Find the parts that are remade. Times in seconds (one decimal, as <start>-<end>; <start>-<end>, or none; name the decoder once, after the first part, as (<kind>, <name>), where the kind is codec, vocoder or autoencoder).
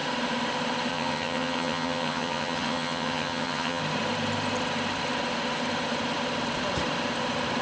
0.9-3.8 (vocoder, HiFi-GAN)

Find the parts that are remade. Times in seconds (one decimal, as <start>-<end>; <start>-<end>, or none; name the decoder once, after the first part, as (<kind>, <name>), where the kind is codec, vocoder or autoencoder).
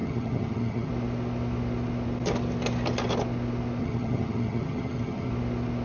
0.0-0.9 (vocoder, HiFi-GAN); 3.8-5.3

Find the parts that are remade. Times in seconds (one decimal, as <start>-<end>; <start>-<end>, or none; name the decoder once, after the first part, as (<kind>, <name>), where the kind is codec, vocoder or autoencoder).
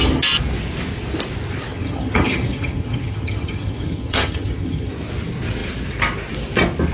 1.7-4.9 (vocoder, HiFi-GAN)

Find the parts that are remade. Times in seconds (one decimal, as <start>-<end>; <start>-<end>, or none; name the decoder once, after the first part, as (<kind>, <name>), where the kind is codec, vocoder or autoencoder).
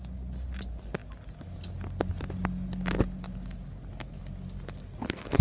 none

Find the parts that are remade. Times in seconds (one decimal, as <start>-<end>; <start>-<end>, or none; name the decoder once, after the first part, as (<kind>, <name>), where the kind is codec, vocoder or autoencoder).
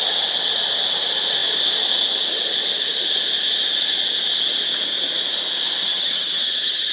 5.9-6.9 (vocoder, HiFi-GAN)